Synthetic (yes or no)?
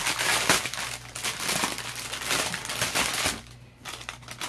no